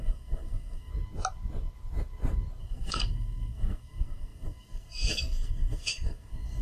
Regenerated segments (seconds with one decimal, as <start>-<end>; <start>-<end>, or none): 0.0-0.9; 2.6-6.6